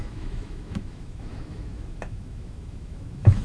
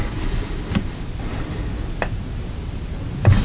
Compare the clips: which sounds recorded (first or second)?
second